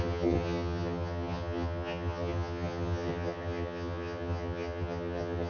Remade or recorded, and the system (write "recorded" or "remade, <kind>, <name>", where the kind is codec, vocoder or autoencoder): remade, vocoder, HiFi-GAN